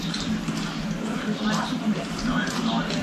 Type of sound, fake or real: real